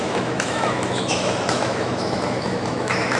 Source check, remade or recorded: remade